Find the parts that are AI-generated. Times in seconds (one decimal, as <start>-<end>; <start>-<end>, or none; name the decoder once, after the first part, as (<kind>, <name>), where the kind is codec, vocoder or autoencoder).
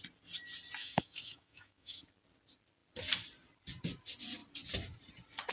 0.8-2.0 (autoencoder, DAC-VAE)